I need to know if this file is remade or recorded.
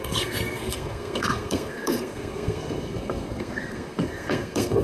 remade